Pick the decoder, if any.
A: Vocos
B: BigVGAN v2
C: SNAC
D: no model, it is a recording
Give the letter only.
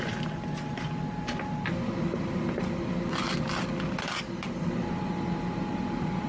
D